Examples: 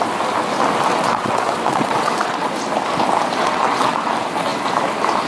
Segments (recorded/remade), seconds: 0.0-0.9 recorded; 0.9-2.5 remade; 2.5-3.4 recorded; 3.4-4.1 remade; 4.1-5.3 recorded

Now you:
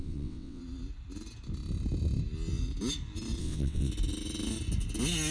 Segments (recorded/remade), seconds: 0.0-0.6 remade; 0.6-3.4 recorded; 3.4-3.9 remade; 3.9-5.3 recorded

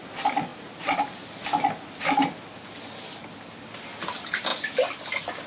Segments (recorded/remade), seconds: 0.0-5.5 recorded

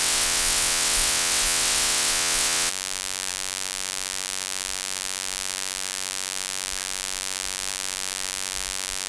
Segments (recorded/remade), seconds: 0.0-2.7 remade; 2.7-9.1 recorded